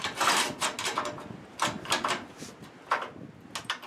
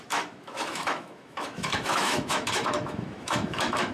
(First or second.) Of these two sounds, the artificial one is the second